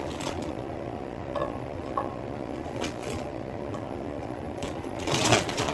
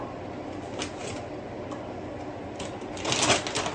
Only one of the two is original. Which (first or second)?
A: second